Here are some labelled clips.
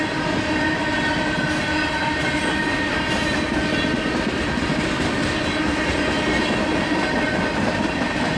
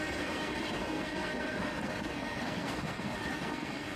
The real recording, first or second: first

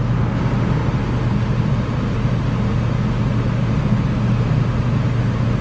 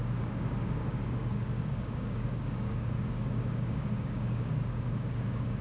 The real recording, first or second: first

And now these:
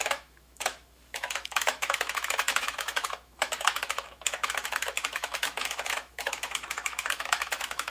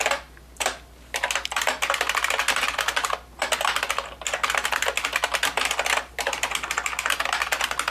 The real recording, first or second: second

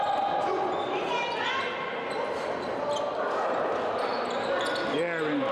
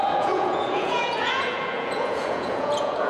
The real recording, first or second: first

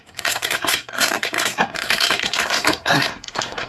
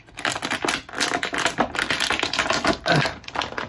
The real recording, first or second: second